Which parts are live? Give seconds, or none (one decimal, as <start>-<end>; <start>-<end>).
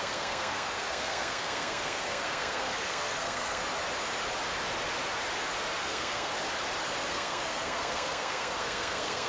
3.6-5.8; 6.3-7.1